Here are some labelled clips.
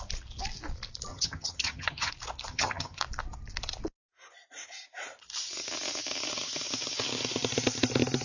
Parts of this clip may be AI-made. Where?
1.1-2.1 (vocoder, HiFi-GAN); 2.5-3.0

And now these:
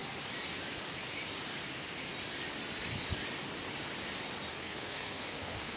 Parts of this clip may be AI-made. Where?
4.5-5.8 (codec, SNAC)

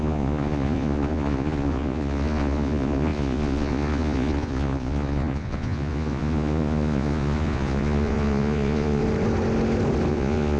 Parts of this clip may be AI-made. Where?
0.0-9.0 (vocoder, Vocos); 10.1-10.6